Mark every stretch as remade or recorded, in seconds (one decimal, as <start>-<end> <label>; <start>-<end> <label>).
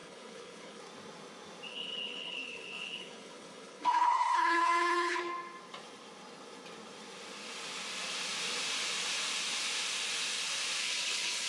0.0-0.8 remade; 0.8-1.7 recorded; 1.7-5.2 remade; 5.2-10.8 recorded; 10.8-11.5 remade